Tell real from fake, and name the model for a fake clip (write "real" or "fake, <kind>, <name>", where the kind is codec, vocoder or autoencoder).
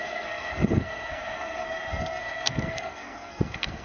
fake, codec, SNAC